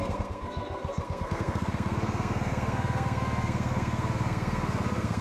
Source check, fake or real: fake